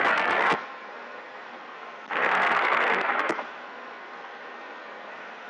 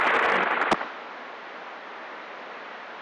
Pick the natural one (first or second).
second